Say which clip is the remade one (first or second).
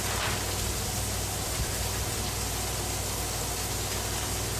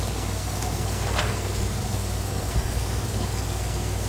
second